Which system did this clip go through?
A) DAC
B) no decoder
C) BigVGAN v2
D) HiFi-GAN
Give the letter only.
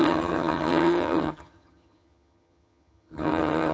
D